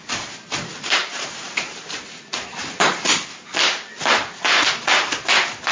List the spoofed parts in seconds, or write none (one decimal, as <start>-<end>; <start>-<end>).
1.0-4.4